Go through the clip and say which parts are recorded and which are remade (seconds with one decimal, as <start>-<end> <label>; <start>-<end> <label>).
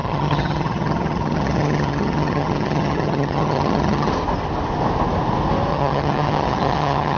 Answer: 0.0-4.1 remade; 4.1-5.7 recorded; 5.7-7.2 remade